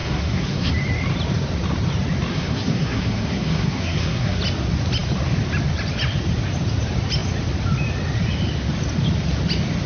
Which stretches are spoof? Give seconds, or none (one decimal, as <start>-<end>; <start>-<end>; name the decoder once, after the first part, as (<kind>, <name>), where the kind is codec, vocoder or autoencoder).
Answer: 0.0-0.7 (codec, SNAC); 2.3-4.4